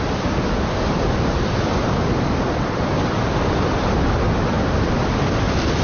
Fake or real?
real